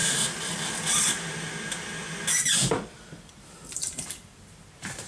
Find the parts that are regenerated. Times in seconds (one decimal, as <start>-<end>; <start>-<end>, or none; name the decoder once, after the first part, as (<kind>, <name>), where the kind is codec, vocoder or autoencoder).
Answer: 3.1-5.1 (vocoder, BigVGAN v2)

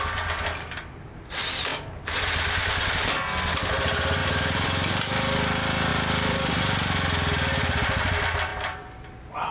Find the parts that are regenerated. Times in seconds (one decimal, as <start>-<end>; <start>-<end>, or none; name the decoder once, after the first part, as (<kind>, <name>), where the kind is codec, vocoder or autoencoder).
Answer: 4.2-4.9 (vocoder, BigVGAN v2); 5.9-8.1; 8.5-9.5

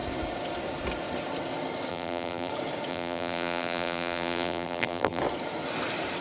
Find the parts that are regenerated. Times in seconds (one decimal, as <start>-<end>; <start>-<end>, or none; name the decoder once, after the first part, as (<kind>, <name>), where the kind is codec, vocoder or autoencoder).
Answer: 1.9-2.5 (vocoder, BigVGAN v2); 2.9-5.2

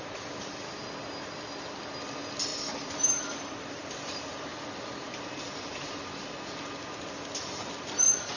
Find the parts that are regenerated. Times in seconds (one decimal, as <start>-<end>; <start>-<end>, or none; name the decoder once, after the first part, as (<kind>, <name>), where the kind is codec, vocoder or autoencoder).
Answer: 2.5-3.9 (vocoder, BigVGAN v2)